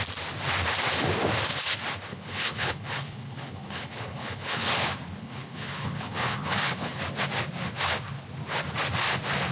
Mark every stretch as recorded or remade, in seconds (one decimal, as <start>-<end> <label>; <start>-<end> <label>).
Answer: 0.0-2.1 recorded; 2.1-4.7 remade; 4.7-5.2 recorded; 5.2-7.0 remade; 7.0-9.5 recorded